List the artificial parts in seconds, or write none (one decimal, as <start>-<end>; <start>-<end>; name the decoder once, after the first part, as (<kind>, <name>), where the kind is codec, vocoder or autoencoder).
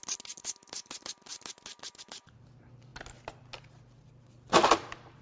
none